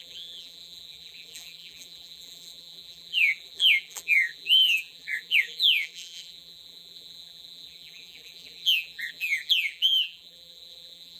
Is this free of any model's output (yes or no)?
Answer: no